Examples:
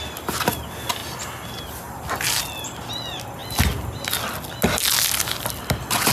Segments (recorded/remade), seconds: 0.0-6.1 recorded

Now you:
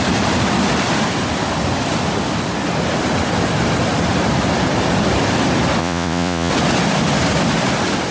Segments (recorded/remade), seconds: 0.0-5.8 recorded; 5.8-6.5 remade; 6.5-8.1 recorded

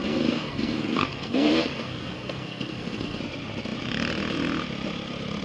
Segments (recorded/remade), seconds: 0.0-3.2 remade; 3.2-5.4 recorded

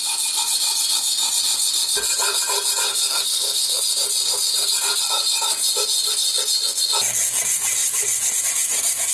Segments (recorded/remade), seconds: 0.0-2.9 recorded; 2.9-3.8 remade; 3.8-9.1 recorded

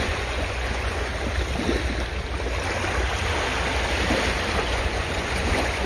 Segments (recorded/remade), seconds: 0.0-1.1 remade; 1.1-4.6 recorded; 4.6-5.9 remade

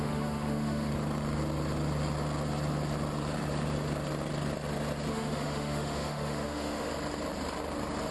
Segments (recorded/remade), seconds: 0.0-0.9 remade; 0.9-5.1 recorded; 5.1-6.9 remade; 6.9-8.1 recorded

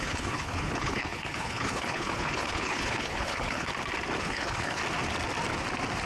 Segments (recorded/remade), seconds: 0.0-3.7 remade; 3.7-4.2 recorded; 4.2-4.8 remade; 4.8-6.1 recorded

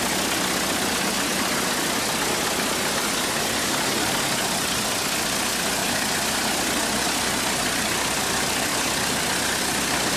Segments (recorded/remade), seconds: 0.0-10.2 recorded